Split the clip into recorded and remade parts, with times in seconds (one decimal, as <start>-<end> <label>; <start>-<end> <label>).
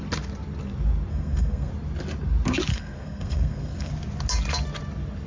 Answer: 0.0-1.1 recorded; 1.1-1.7 remade; 1.7-2.7 recorded; 2.7-3.9 remade; 3.9-5.3 recorded